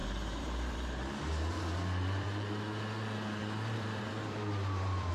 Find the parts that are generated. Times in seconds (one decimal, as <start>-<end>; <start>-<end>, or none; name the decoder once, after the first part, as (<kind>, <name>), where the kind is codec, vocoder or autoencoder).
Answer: 0.0-2.8 (vocoder, BigVGAN v2); 3.4-5.1